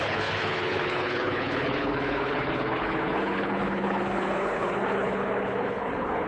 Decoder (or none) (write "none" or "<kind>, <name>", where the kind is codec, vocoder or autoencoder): codec, HILCodec